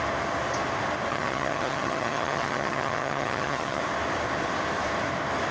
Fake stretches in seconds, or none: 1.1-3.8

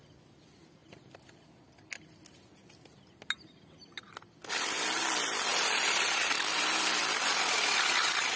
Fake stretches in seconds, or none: none